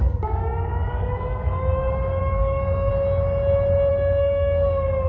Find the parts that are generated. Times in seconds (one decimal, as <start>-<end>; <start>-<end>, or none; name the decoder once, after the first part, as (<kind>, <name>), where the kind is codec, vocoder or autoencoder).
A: 0.0-2.9 (codec, DAC); 3.9-5.1